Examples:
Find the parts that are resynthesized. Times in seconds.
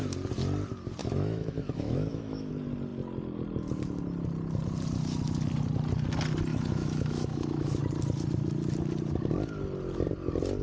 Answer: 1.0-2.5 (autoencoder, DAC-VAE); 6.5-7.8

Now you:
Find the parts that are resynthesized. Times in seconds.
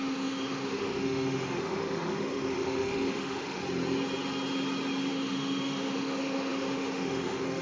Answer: 0.0-3.6 (autoencoder, DAC-VAE); 5.1-7.6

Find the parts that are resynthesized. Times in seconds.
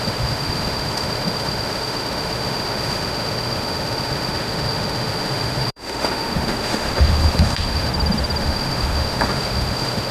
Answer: 0.0-7.9 (autoencoder, DAC-VAE); 8.4-10.1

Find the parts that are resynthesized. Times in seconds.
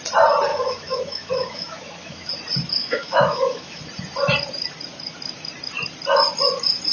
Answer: 0.5-2.3 (autoencoder, DAC-VAE); 2.8-3.8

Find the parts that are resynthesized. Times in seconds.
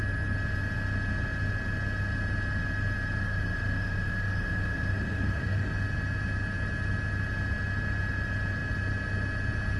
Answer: 3.2-5.7 (autoencoder, DAC-VAE)